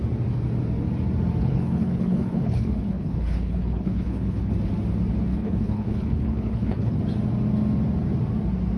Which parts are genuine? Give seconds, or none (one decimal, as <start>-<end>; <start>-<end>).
0.0-1.4; 4.5-5.3; 7.0-8.8